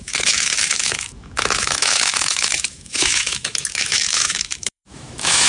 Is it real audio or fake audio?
fake